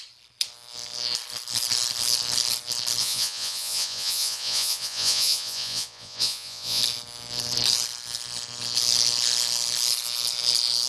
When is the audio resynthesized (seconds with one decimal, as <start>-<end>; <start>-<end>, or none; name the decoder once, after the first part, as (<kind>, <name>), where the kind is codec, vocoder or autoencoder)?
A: 3.0-6.8 (vocoder, Vocos)

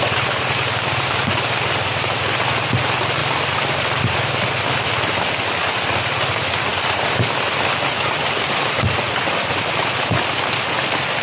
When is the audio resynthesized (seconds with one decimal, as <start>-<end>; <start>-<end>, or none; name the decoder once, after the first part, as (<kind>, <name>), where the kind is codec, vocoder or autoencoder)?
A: none

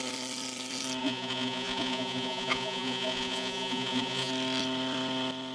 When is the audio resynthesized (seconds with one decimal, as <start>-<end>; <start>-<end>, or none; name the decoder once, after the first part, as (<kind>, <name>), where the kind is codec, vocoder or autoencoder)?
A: 1.0-4.3 (vocoder, Vocos)

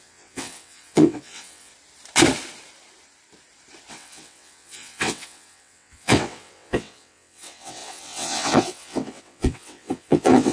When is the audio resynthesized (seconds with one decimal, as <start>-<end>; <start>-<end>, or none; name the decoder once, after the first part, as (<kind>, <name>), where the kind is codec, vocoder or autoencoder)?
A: 0.0-1.7 (vocoder, WaveNeXt); 3.9-10.5